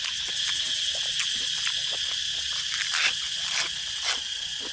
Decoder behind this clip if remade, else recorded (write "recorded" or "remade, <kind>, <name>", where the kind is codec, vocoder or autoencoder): recorded